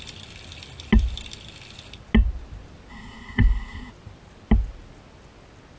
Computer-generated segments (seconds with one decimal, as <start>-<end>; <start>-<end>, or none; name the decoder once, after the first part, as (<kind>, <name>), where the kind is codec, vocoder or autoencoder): 2.9-3.9 (codec, SNAC)